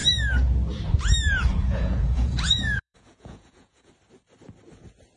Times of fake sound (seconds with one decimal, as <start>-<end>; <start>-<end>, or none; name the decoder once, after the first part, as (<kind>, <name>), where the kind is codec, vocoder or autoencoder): 1.5-3.9 (vocoder, Vocos)